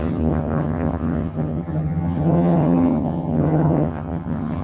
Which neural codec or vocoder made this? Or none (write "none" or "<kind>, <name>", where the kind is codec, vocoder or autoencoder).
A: vocoder, HiFi-GAN